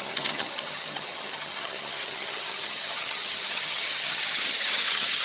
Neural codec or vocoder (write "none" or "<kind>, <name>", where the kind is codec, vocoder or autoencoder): vocoder, HiFi-GAN